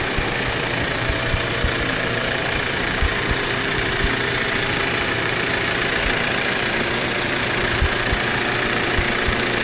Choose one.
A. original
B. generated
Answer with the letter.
B